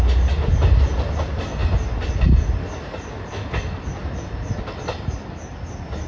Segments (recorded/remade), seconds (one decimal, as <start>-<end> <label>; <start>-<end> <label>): 0.0-6.1 recorded

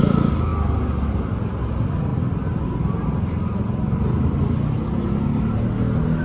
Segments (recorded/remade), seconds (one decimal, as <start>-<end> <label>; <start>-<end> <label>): 0.0-6.2 recorded

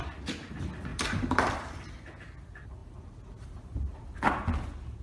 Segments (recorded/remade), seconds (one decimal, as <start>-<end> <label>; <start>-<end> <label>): 0.0-0.9 recorded; 0.9-1.8 remade; 1.8-2.8 recorded; 2.8-4.2 remade; 4.2-5.0 recorded

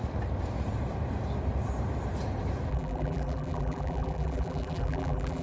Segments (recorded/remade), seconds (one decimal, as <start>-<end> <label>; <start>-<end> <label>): 0.0-2.7 recorded; 2.7-5.4 remade

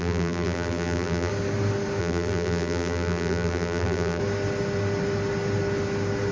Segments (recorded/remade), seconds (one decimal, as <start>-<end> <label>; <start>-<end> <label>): 0.0-1.3 remade; 1.3-2.0 recorded; 2.0-4.2 remade; 4.2-6.3 recorded

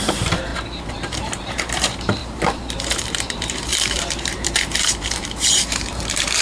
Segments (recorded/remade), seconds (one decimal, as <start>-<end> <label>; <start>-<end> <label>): 0.0-0.5 remade; 0.5-1.0 recorded; 1.0-6.4 remade

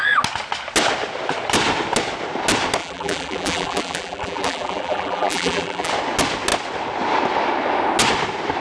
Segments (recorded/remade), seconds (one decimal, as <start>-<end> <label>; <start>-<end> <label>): 0.0-2.8 recorded; 2.8-5.9 remade; 5.9-8.6 recorded